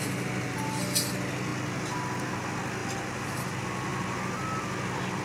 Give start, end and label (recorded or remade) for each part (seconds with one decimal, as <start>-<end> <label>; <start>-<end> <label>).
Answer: 0.0-5.2 recorded

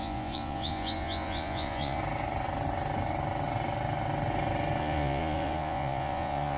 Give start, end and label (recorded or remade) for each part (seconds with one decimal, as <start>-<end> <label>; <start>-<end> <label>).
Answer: 0.0-2.0 remade; 2.0-4.8 recorded; 4.8-6.6 remade

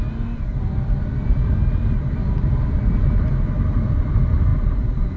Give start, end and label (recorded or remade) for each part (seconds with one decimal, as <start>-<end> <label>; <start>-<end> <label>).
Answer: 0.0-5.2 recorded